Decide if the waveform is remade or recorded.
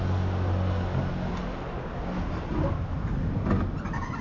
recorded